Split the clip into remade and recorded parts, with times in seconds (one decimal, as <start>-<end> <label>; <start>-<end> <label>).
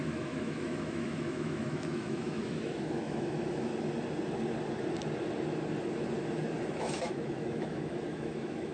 0.0-3.7 remade; 3.7-6.8 recorded; 6.8-8.7 remade